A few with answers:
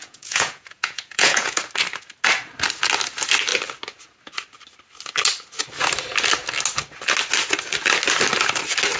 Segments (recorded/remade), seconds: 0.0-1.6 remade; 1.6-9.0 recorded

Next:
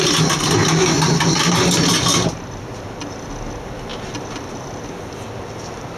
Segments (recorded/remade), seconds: 0.0-6.0 recorded

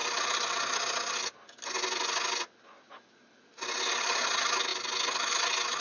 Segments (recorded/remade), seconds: 0.0-5.8 recorded

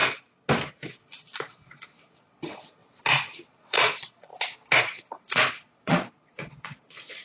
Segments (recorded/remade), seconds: 0.0-1.0 recorded; 1.0-2.8 remade; 2.8-3.5 recorded; 3.5-4.3 remade; 4.3-4.8 recorded; 4.8-7.2 remade

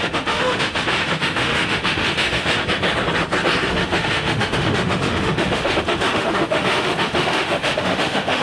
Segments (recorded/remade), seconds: 0.0-2.6 remade; 2.6-3.7 recorded; 3.7-8.4 remade